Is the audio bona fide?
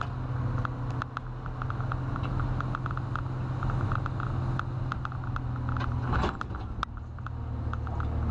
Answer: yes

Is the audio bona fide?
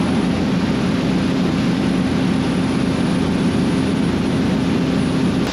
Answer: yes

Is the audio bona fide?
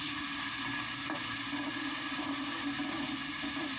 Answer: yes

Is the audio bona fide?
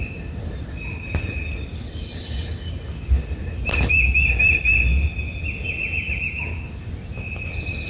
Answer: yes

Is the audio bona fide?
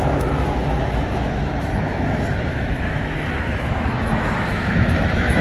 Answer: no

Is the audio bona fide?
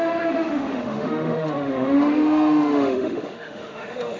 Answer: no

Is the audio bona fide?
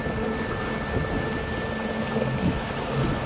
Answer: yes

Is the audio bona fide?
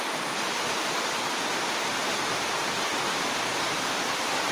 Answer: yes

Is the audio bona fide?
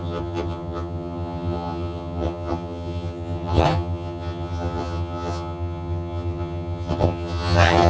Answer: no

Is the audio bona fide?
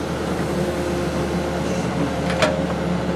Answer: yes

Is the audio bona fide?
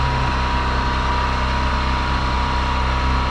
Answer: yes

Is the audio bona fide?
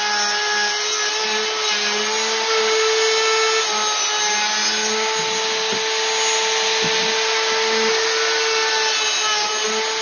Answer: yes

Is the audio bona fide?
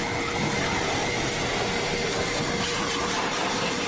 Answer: no